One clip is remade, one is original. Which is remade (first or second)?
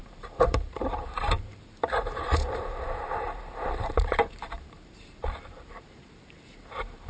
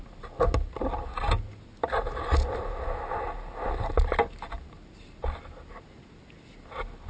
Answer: first